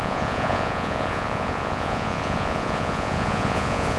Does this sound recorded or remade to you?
remade